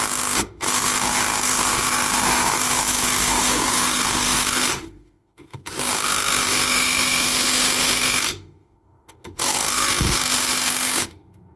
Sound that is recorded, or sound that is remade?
remade